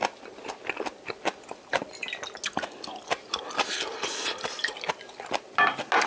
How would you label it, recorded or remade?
recorded